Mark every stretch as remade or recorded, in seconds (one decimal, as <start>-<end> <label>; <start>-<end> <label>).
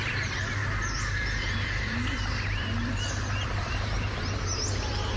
0.0-3.5 recorded; 3.5-4.6 remade; 4.6-5.2 recorded